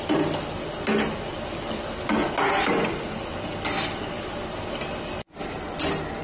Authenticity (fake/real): real